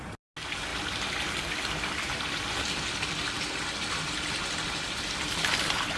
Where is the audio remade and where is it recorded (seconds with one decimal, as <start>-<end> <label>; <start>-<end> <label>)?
0.0-6.0 recorded